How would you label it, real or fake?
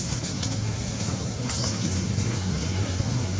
fake